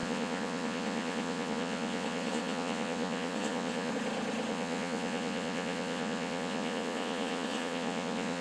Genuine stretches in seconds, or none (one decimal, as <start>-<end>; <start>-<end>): 3.9-4.5